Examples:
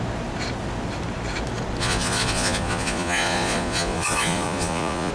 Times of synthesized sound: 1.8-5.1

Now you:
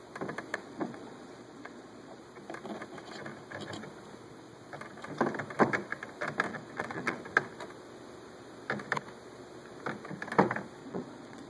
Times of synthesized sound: 0.5-2.2; 6.5-7.2; 10.8-11.5